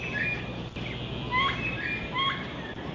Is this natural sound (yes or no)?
yes